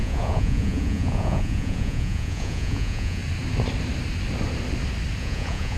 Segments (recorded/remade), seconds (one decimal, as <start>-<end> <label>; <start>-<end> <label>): 0.0-3.2 remade; 3.2-5.2 recorded; 5.2-5.8 remade